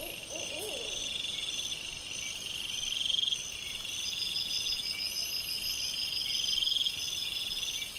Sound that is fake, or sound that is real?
real